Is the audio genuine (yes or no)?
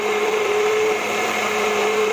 no